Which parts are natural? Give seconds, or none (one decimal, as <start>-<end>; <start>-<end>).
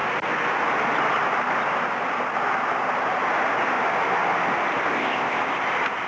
0.0-4.9; 5.4-6.1